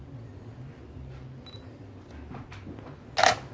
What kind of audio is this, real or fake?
real